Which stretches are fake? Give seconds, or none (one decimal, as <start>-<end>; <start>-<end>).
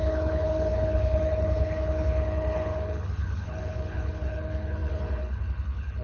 0.0-6.0